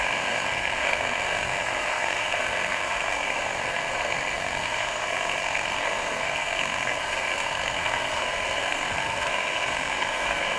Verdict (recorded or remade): remade